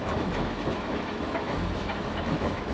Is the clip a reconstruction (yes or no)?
yes